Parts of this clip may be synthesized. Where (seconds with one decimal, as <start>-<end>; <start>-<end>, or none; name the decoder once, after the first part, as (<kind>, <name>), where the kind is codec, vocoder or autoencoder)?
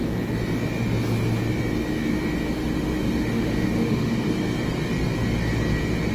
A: 2.6-4.3 (autoencoder, DAC-VAE)